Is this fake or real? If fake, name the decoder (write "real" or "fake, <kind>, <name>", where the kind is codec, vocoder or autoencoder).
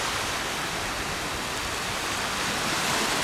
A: real